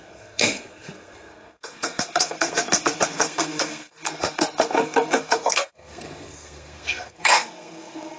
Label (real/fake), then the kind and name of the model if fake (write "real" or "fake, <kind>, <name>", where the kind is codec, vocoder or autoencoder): fake, codec, SNAC